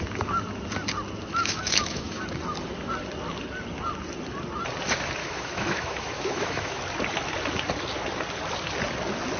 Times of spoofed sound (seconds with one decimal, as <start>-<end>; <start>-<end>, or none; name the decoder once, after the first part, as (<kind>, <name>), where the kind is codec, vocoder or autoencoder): 1.4-2.2 (autoencoder, DAC-VAE); 5.2-6.8